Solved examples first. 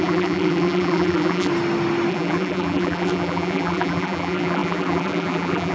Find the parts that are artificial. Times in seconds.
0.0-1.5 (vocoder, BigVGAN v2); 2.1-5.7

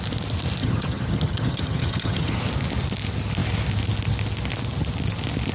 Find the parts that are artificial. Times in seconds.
0.6-2.4 (vocoder, HiFi-GAN)

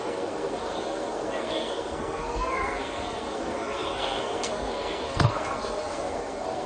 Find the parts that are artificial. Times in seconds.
0.0-6.7 (codec, SNAC)

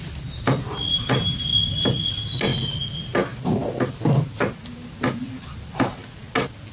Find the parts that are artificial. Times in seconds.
none

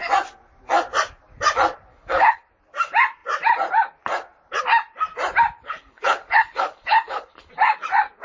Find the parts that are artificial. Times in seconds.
1.9-2.4 (codec, HILCodec); 5.6-7.5

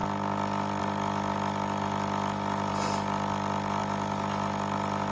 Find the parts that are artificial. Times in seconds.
none